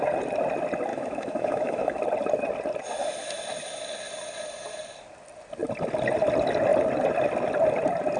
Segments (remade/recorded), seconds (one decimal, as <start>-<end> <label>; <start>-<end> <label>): 0.0-0.9 recorded; 0.9-2.0 remade; 2.0-8.2 recorded